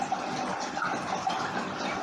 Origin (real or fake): real